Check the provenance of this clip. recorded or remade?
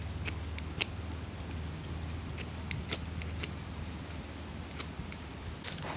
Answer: recorded